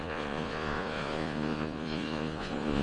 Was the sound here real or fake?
fake